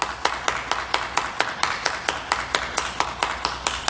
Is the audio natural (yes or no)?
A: yes